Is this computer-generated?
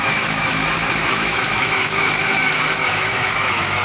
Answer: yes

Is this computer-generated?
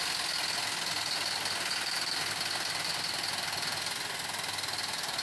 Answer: no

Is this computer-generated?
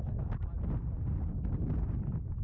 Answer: no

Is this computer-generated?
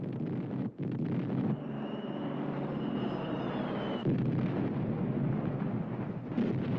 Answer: no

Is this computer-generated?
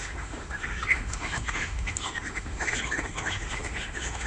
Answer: yes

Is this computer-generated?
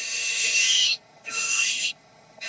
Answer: yes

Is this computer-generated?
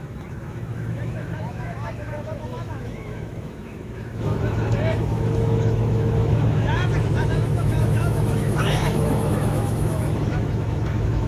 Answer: yes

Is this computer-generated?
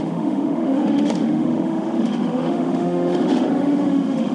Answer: yes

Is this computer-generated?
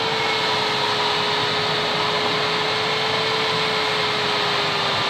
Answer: no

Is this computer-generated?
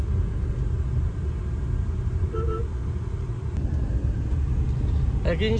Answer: no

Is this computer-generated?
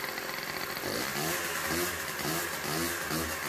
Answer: no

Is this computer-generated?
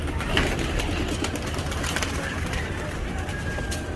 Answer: no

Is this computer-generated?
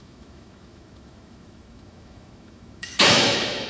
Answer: yes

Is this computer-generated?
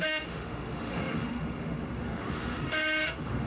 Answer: yes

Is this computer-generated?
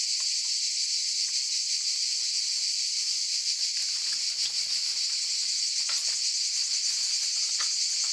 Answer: no